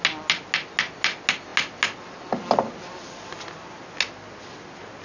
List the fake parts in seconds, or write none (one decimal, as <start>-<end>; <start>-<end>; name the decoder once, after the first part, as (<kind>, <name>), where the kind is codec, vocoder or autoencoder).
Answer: none

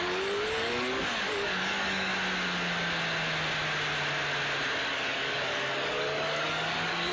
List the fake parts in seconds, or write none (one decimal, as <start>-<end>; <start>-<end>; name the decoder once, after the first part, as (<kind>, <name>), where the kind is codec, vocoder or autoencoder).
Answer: 0.0-2.1 (codec, DAC); 4.9-7.1

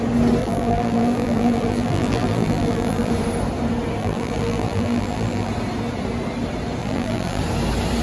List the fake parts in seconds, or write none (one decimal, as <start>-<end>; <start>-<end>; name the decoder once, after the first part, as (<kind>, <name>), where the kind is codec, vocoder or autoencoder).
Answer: 0.4-3.1 (vocoder, BigVGAN v2); 4.0-5.5; 6.8-7.4

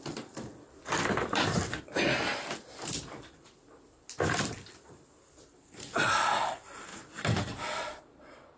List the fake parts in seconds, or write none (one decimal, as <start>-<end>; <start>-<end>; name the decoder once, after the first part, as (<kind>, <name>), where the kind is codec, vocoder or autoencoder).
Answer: 0.5-1.8 (vocoder, BigVGAN v2); 2.3-6.1; 6.9-8.0

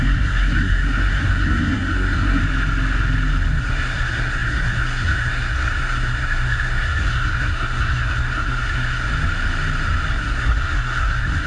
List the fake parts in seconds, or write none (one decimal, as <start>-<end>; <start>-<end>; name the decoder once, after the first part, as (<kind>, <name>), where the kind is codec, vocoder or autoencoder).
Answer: 0.0-2.4 (codec, SNAC); 3.5-9.1; 10.1-11.5

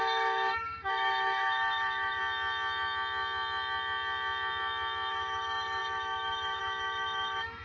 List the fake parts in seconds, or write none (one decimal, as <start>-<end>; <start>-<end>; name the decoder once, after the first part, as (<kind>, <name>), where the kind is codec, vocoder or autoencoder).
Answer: 0.0-2.2 (autoencoder, DAC-VAE); 5.1-7.6

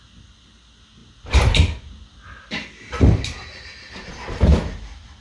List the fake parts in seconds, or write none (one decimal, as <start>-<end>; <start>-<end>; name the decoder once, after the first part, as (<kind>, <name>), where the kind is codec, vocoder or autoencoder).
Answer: none

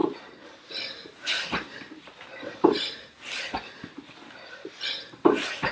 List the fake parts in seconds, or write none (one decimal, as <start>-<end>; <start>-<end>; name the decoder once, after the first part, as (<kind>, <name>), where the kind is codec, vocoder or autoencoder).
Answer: 0.0-0.7 (vocoder, BigVGAN v2); 1.1-3.4